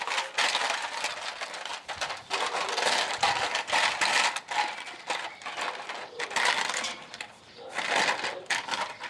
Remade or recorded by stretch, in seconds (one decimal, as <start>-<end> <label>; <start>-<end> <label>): 0.0-9.1 recorded